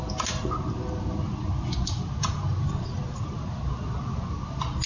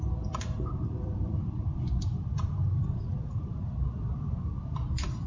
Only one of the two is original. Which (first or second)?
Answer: first